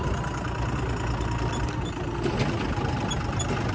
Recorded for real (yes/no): yes